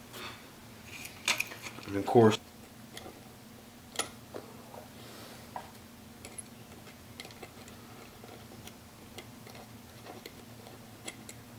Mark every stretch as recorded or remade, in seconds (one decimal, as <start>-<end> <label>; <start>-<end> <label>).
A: 0.0-11.6 recorded